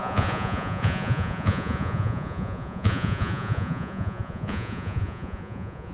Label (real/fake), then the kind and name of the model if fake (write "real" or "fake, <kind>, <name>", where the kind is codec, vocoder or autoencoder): fake, vocoder, Vocos